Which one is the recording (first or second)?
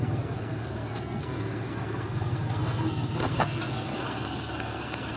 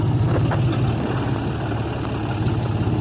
second